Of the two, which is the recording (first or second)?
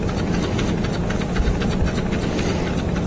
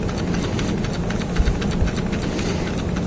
second